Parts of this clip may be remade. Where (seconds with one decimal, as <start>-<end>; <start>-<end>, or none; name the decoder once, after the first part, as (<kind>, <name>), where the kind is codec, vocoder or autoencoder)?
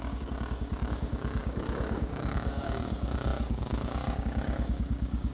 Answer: 0.0-5.3 (codec, DAC)